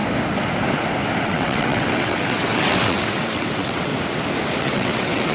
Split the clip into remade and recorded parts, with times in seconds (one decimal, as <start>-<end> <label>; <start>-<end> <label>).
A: 0.0-1.2 recorded; 1.2-3.9 remade; 3.9-4.6 recorded; 4.6-5.3 remade